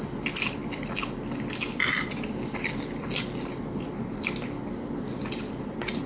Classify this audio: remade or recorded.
recorded